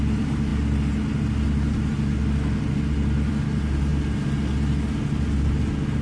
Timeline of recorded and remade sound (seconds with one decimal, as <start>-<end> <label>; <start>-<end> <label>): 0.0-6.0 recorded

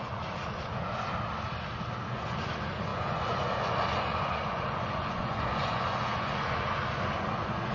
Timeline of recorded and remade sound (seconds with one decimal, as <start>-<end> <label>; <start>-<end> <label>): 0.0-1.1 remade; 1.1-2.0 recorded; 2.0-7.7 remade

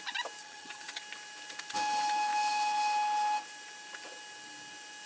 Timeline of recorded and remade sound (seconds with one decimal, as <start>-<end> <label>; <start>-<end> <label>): 0.0-0.4 recorded; 0.4-1.0 remade; 1.0-5.1 recorded

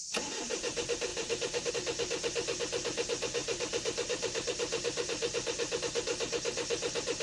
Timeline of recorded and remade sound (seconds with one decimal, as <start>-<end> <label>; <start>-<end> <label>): 0.0-1.1 recorded; 1.1-1.7 remade; 1.7-3.4 recorded; 3.4-5.8 remade; 5.8-7.2 recorded

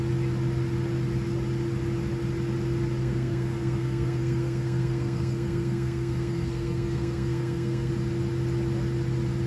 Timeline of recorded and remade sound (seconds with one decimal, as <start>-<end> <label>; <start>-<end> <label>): 0.0-3.0 recorded; 3.0-7.9 remade; 7.9-9.5 recorded

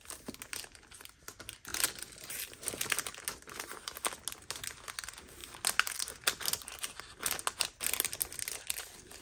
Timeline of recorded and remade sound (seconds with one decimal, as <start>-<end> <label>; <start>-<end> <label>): 0.0-9.2 recorded

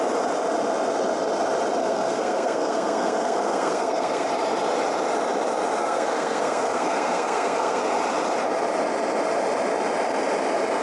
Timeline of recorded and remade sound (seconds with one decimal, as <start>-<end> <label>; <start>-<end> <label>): 0.0-1.8 recorded; 1.8-4.3 remade; 4.3-5.8 recorded; 5.8-7.8 remade; 7.8-10.8 recorded

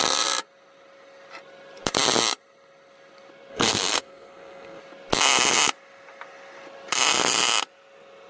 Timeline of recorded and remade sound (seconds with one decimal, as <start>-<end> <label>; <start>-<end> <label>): 0.0-3.5 recorded; 3.5-4.8 remade; 4.8-8.3 recorded